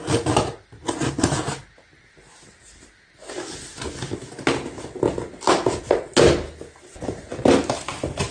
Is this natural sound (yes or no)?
yes